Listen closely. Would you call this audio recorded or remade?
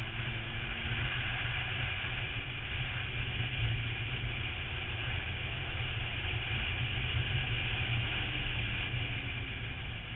recorded